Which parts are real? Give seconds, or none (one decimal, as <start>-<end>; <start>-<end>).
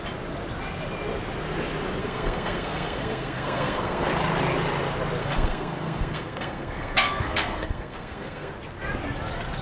0.0-2.0; 4.1-5.2; 8.5-9.6